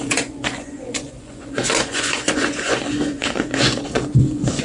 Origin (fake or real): fake